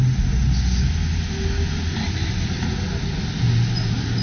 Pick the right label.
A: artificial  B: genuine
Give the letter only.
B